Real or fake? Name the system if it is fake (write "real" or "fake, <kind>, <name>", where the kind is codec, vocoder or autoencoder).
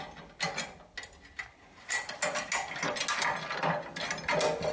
real